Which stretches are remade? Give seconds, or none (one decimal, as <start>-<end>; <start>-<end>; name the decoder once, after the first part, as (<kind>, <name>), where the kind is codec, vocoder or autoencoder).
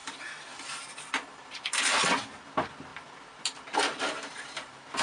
0.0-1.6 (vocoder, BigVGAN v2)